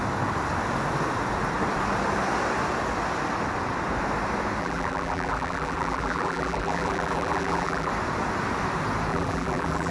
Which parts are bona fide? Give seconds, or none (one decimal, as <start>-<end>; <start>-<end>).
0.0-4.6; 7.9-9.1